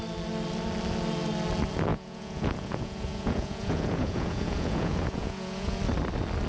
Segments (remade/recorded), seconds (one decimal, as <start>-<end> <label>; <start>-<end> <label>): 0.0-1.9 recorded; 1.9-5.8 remade; 5.8-6.5 recorded

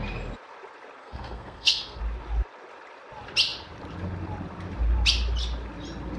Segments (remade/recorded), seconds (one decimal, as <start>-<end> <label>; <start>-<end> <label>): 0.0-1.0 recorded; 1.0-2.0 remade; 2.0-6.2 recorded

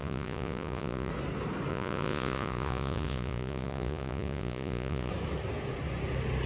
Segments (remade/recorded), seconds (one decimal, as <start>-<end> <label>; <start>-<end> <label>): 0.0-1.1 remade; 1.1-1.7 recorded; 1.7-5.1 remade; 5.1-6.5 recorded

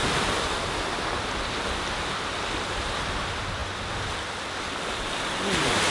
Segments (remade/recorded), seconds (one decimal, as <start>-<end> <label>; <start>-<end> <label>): 0.0-5.9 recorded

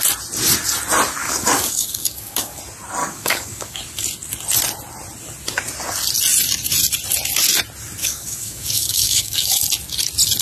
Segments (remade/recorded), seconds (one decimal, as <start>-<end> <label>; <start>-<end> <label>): 0.0-1.2 recorded; 1.2-2.6 remade; 2.6-3.0 recorded; 3.0-3.8 remade; 3.8-8.0 recorded; 8.0-9.6 remade; 9.6-10.4 recorded